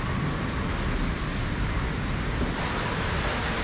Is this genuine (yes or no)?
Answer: yes